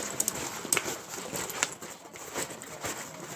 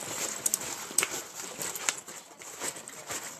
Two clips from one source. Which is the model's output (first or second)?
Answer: second